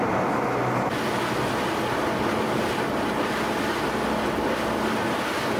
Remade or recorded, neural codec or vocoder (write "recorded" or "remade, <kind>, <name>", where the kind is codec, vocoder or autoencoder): recorded